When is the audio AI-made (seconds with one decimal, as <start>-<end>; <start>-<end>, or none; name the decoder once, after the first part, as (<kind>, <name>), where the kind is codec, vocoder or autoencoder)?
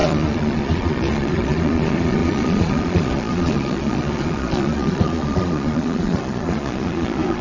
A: 0.0-7.4 (vocoder, Vocos)